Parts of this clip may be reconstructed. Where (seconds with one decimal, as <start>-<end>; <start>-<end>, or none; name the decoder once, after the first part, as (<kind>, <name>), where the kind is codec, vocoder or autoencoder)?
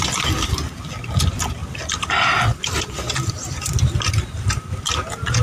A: none